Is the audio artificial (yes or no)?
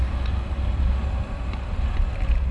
no